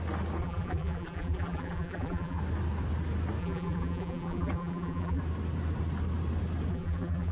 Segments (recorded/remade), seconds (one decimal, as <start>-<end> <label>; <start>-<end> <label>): 0.0-0.4 recorded; 0.4-2.4 remade; 2.4-3.4 recorded; 3.4-5.2 remade; 5.2-6.7 recorded; 6.7-7.3 remade